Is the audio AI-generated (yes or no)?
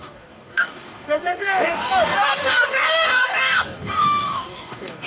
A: yes